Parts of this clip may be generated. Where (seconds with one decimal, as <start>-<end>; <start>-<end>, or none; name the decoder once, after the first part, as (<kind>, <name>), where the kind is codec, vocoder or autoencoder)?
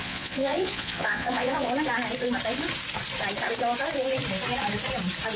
0.0-1.7 (vocoder, Vocos)